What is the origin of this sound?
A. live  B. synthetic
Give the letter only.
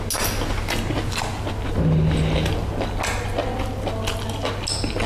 A